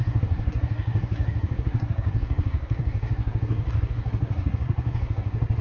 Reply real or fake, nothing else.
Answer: fake